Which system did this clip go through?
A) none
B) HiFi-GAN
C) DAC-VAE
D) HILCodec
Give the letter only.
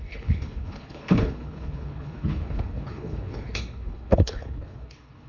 D